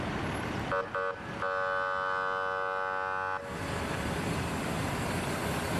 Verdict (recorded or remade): recorded